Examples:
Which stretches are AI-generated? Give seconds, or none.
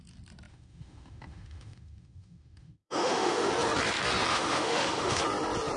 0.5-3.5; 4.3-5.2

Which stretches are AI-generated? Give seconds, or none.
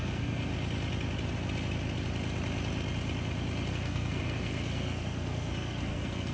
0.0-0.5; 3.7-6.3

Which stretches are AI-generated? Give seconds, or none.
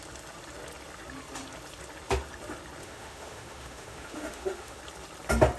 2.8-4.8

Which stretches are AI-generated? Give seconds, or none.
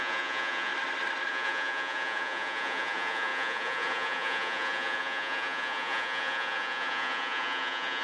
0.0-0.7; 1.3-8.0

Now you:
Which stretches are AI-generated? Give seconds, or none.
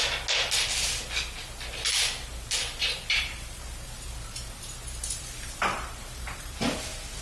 2.8-7.2